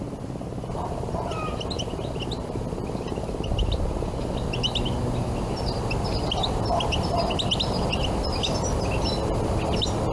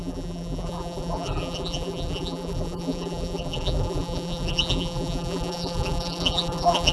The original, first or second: first